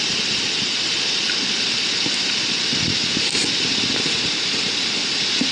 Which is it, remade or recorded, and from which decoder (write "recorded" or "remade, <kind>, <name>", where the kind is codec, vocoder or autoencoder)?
recorded